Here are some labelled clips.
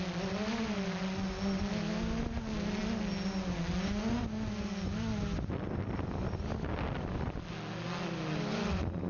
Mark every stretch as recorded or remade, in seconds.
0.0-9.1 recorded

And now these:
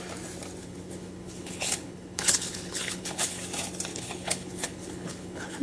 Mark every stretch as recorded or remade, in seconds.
0.0-0.6 recorded; 0.6-3.4 remade; 3.4-3.9 recorded; 3.9-5.6 remade